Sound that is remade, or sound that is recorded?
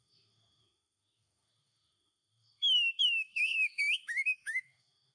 remade